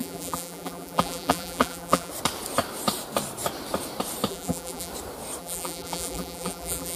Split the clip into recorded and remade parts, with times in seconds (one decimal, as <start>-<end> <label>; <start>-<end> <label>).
0.0-2.1 remade; 2.1-4.3 recorded; 4.3-4.9 remade; 4.9-5.4 recorded; 5.4-7.0 remade